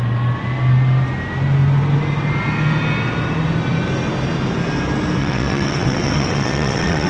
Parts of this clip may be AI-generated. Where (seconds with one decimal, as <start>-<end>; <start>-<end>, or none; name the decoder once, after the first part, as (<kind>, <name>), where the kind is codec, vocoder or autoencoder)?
5.2-7.1 (vocoder, WaveNeXt)